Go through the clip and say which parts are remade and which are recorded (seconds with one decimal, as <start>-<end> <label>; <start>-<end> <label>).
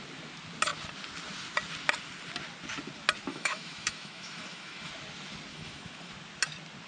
0.0-3.3 recorded; 3.3-4.9 remade; 4.9-5.5 recorded; 5.5-6.1 remade; 6.1-6.9 recorded